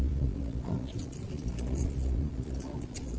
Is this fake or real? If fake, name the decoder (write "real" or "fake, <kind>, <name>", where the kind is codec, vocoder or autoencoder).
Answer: fake, vocoder, Vocos